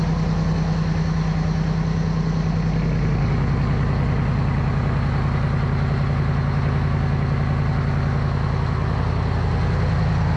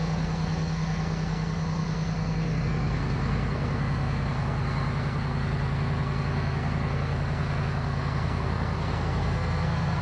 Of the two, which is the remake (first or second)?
second